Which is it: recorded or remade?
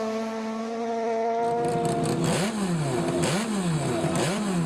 recorded